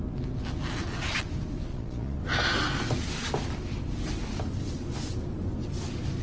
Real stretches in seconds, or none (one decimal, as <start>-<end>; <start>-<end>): 0.0-1.7; 2.2-6.2